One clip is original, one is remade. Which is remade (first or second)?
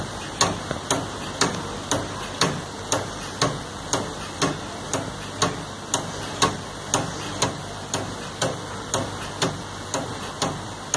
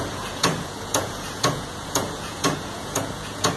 second